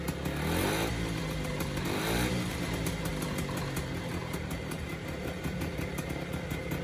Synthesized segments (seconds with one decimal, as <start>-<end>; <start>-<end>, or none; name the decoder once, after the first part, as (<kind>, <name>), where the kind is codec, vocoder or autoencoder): 2.5-3.1 (vocoder, BigVGAN v2); 4.1-6.8